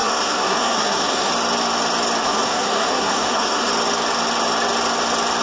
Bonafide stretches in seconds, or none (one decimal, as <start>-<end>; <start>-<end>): 1.3-2.2; 3.7-5.4